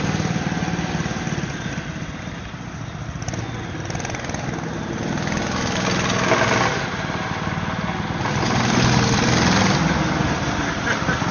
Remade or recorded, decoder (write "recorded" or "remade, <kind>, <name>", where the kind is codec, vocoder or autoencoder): recorded